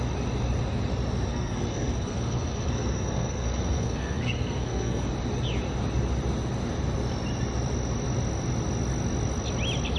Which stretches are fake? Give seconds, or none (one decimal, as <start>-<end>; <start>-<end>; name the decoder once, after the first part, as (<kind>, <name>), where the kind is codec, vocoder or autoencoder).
1.3-5.1 (codec, SNAC)